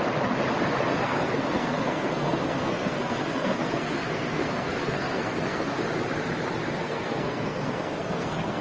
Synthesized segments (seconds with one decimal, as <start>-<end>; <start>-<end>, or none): 0.9-5.8; 6.8-8.6